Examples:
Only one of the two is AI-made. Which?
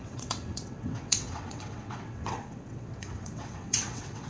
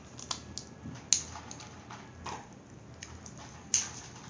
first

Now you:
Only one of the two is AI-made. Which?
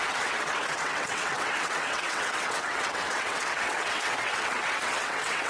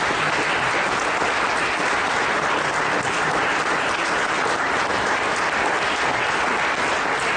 first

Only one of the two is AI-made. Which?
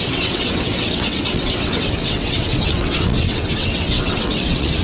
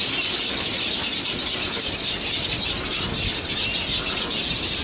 first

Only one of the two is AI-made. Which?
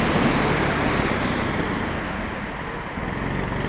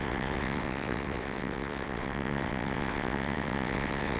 second